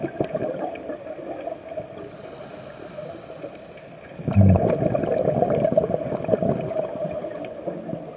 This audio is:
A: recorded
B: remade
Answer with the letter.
A